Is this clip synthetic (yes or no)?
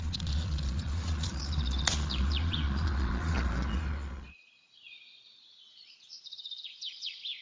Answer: yes